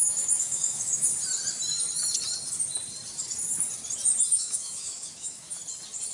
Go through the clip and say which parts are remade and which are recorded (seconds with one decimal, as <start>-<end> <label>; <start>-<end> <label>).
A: 0.0-1.1 remade; 1.1-4.3 recorded; 4.3-5.6 remade; 5.6-6.1 recorded